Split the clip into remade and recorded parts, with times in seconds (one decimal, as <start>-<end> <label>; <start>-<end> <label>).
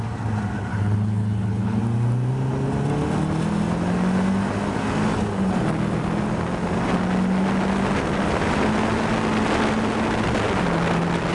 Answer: 0.0-0.7 recorded; 0.7-1.8 remade; 1.8-11.3 recorded